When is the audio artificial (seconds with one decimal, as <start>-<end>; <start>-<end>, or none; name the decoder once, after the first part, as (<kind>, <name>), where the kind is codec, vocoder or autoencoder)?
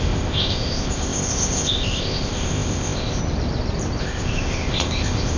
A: 0.0-3.2 (codec, ZipCodec); 4.0-5.4